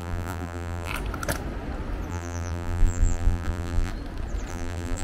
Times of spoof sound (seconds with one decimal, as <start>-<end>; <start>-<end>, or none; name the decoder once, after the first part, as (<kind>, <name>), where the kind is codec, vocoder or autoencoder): 0.0-0.9 (vocoder, BigVGAN v2); 2.1-3.9; 4.5-5.0